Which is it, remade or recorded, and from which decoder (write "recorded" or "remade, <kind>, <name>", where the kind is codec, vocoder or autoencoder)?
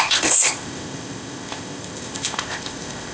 remade, codec, ZipCodec